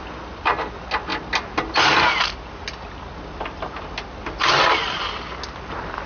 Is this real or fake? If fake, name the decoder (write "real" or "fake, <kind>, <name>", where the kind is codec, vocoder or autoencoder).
real